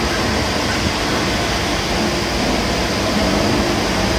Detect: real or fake real